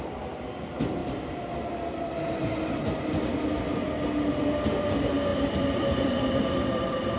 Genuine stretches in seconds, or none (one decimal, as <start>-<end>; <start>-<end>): 1.0-4.8